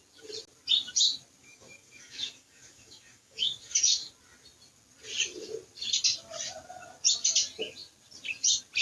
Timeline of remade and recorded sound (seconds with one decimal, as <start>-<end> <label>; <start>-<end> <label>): 0.0-1.4 recorded; 1.4-4.1 remade; 4.1-8.8 recorded